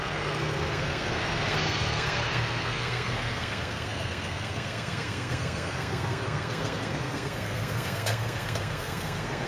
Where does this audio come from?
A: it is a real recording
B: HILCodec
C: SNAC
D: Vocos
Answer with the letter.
C